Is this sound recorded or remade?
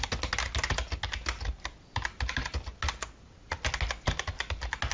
recorded